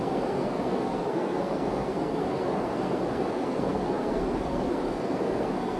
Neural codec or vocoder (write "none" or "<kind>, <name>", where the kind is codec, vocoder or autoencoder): codec, SNAC